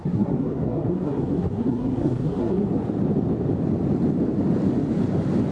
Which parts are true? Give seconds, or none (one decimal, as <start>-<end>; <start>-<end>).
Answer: 2.8-5.5

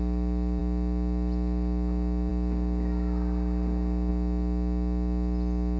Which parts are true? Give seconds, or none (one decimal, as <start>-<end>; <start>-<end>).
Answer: 0.0-5.8

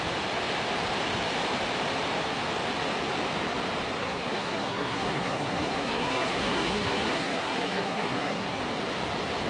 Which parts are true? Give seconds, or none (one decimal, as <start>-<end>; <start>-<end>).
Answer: 0.0-4.0; 8.6-9.5